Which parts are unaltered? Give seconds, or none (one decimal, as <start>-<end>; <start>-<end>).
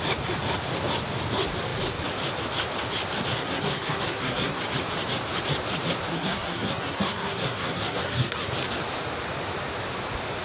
0.0-3.3; 4.6-6.1; 8.5-10.4